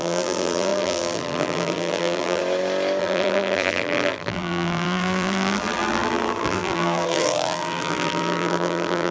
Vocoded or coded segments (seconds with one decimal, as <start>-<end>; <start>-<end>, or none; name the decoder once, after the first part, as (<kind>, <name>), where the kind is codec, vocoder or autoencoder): 0.0-2.4 (vocoder, BigVGAN v2); 3.0-9.1